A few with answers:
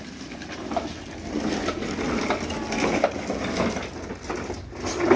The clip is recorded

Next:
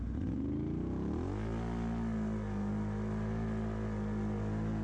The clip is recorded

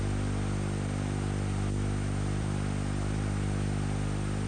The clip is recorded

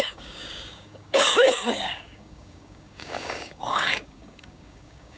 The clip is remade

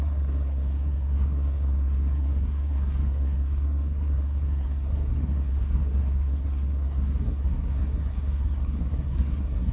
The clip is remade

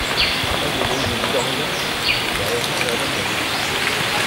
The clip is recorded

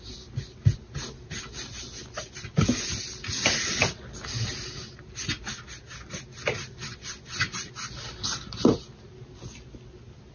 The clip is recorded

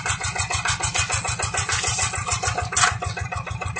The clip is recorded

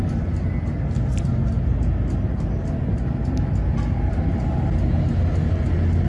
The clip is recorded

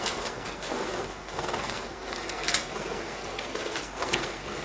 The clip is remade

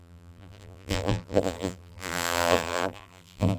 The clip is remade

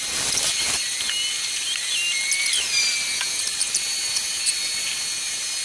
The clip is recorded